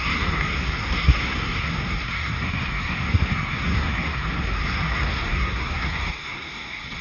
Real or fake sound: fake